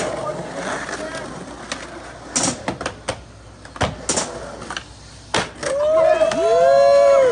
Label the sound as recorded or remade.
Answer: recorded